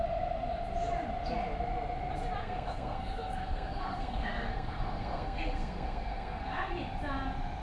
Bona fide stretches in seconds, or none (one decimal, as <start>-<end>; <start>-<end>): 0.0-2.4; 6.7-7.6